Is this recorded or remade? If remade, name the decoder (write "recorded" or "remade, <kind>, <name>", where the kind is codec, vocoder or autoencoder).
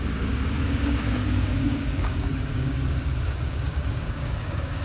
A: remade, codec, DAC